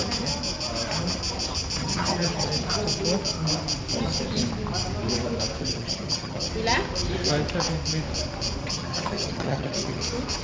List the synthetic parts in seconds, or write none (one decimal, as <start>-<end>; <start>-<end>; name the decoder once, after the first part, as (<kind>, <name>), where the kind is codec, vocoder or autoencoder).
1.8-2.5 (vocoder, HiFi-GAN); 5.6-6.5; 8.6-10.0